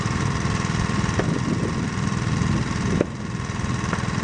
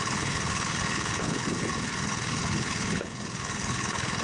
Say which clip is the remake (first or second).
second